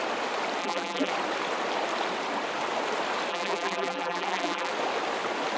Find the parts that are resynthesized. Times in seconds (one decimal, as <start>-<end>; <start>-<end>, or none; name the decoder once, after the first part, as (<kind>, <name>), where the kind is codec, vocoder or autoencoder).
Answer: 0.6-1.1 (vocoder, BigVGAN v2); 3.3-4.7